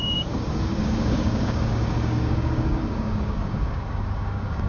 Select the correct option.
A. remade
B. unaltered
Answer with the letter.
A